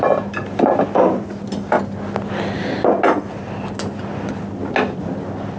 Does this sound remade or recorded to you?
recorded